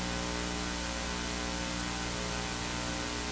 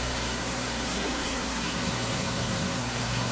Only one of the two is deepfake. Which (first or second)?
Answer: second